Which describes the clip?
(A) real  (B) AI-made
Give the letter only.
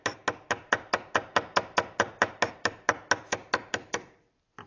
A